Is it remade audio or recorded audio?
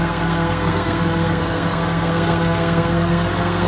remade